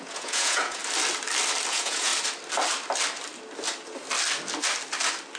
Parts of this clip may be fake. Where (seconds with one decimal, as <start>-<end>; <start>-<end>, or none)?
0.0-0.8; 1.7-2.1